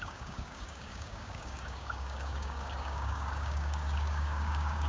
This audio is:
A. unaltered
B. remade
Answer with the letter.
B